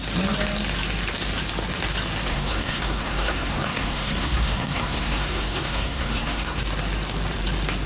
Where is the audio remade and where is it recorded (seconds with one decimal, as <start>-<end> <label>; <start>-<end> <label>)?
0.0-2.3 recorded; 2.3-6.6 remade; 6.6-7.9 recorded